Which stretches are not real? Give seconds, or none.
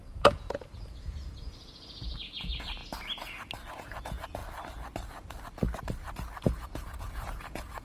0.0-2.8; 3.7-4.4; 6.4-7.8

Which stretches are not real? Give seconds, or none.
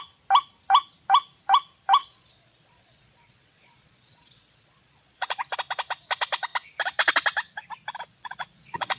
2.0-5.4; 8.1-9.0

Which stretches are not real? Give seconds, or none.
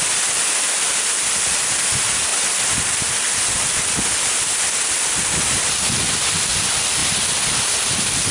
none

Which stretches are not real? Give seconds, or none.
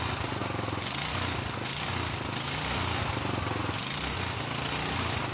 none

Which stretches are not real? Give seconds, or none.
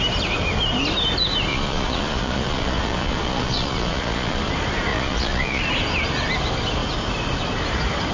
1.5-4.5; 4.9-5.6